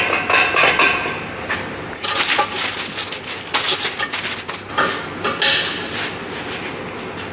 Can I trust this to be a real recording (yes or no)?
yes